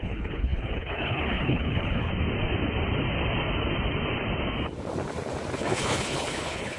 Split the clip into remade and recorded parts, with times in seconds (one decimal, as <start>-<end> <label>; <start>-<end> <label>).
0.0-2.1 remade; 2.1-5.6 recorded; 5.6-6.8 remade